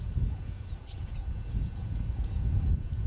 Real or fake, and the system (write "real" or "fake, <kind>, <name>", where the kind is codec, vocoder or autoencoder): fake, vocoder, Vocos